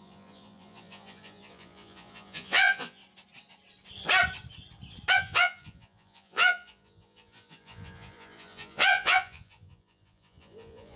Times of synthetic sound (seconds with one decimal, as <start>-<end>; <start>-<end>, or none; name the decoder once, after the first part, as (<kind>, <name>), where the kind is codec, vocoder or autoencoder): 0.0-3.0 (vocoder, Vocos); 5.1-11.0